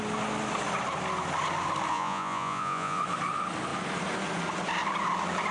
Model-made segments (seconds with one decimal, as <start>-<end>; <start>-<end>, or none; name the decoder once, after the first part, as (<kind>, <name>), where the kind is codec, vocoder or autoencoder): 1.9-3.0 (vocoder, Vocos)